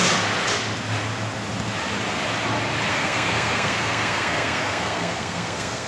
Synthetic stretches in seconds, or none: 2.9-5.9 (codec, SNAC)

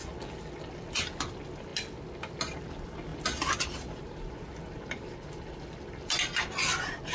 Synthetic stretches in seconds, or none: none

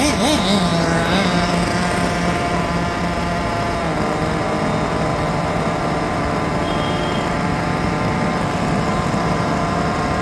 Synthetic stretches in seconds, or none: 5.1-6.2 (vocoder, BigVGAN v2); 8.9-9.5

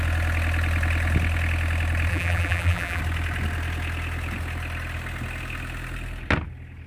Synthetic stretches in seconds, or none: 2.1-3.0 (vocoder, BigVGAN v2)

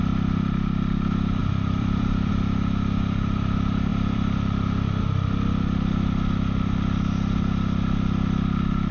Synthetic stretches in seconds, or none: 1.4-2.3 (vocoder, BigVGAN v2); 3.9-5.0